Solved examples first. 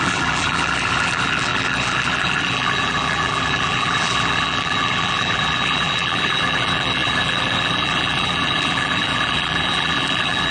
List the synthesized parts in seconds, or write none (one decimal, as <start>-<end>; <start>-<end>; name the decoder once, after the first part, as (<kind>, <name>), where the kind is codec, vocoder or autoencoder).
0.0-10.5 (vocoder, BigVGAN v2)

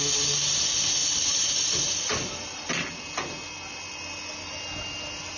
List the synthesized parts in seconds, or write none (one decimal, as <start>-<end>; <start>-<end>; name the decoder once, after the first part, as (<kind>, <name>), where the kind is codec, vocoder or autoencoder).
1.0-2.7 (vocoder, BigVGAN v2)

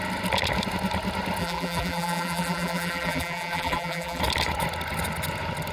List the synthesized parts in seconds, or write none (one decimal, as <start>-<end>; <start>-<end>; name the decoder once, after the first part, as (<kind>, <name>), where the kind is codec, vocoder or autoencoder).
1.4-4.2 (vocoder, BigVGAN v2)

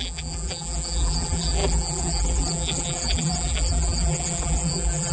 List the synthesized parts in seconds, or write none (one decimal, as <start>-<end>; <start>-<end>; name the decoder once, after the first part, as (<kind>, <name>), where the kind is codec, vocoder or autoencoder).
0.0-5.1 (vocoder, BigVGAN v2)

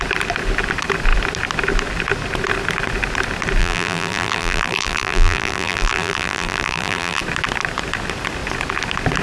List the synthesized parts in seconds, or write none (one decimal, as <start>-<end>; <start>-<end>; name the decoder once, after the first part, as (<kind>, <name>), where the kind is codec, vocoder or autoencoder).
3.6-7.2 (vocoder, BigVGAN v2)

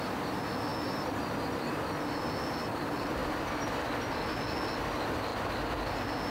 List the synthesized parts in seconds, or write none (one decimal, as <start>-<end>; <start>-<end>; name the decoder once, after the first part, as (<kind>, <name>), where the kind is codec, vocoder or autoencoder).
0.7-2.4 (vocoder, BigVGAN v2); 5.3-5.8

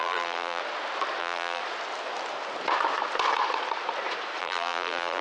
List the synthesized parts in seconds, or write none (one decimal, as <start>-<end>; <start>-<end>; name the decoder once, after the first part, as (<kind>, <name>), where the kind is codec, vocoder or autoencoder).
0.0-0.6 (vocoder, BigVGAN v2); 1.2-1.6; 4.4-5.2

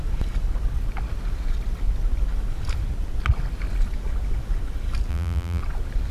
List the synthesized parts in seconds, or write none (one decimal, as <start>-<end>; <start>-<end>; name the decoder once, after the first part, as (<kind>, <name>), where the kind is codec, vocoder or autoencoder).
5.1-5.6 (vocoder, BigVGAN v2)